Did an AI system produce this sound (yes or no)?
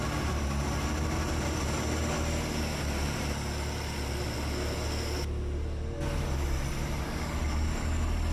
no